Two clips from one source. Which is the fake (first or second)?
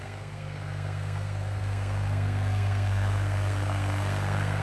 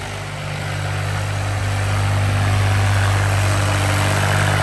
first